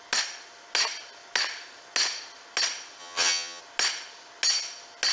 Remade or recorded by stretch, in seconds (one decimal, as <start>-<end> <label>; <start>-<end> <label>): 0.0-3.0 recorded; 3.0-3.6 remade; 3.6-5.1 recorded